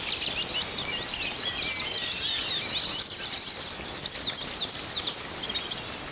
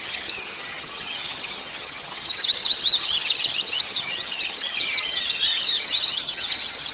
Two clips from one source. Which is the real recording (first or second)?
first